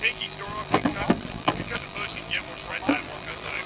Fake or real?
fake